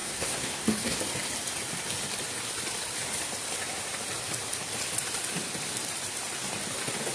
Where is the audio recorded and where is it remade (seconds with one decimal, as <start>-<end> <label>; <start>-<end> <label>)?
0.0-1.0 remade; 1.0-7.1 recorded